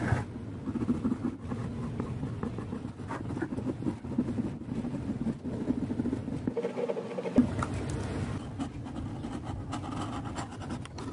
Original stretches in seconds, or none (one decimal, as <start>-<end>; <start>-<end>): 0.0-11.1